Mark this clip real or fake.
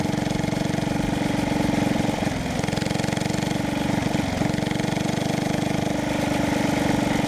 real